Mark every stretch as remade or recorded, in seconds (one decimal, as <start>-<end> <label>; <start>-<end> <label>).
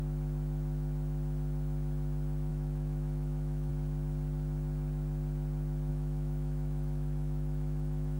0.0-2.5 recorded; 2.5-3.7 remade; 3.7-5.9 recorded; 5.9-8.2 remade